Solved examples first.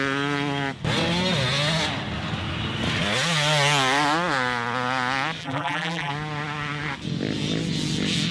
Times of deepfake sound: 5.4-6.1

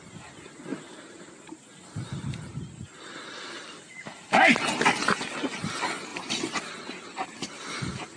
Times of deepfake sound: 0.7-2.6; 6.1-6.7

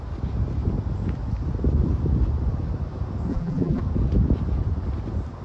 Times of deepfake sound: 3.3-3.8

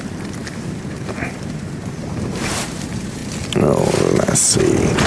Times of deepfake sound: 0.0-3.2; 4.6-5.1

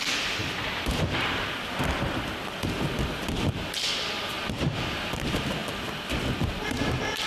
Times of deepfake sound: 0.4-4.8

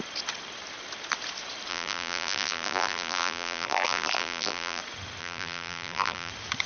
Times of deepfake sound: 1.7-4.8; 5.2-6.3

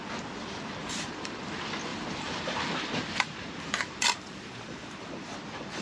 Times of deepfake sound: 0.8-1.4; 1.9-5.8